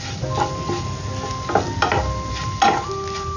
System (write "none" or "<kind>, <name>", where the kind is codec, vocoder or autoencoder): none